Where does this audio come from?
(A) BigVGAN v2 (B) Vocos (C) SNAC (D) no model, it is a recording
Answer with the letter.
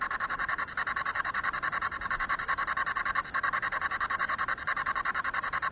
D